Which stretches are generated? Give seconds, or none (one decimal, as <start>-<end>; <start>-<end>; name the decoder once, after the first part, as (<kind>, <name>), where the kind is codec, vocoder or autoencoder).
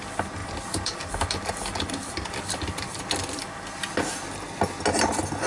none